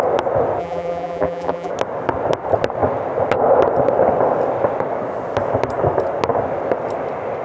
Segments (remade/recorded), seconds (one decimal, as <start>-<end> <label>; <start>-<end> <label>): 0.0-0.6 recorded; 0.6-1.7 remade; 1.7-7.4 recorded